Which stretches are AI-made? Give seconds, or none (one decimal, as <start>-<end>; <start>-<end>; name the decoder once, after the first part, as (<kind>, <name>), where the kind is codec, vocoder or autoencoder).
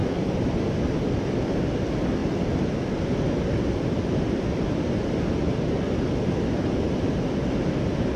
0.0-0.5 (vocoder, BigVGAN v2)